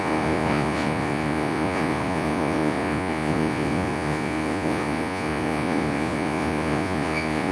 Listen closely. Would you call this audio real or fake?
fake